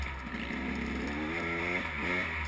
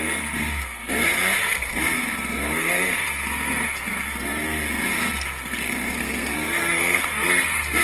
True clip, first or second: first